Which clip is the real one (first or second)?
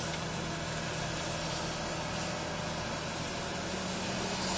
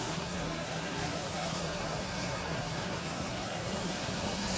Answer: first